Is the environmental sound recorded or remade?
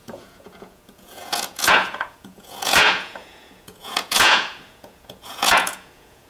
remade